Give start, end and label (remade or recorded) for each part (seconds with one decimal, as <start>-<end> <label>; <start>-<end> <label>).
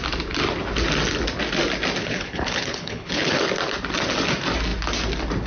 0.0-2.0 recorded; 2.0-3.4 remade; 3.4-5.5 recorded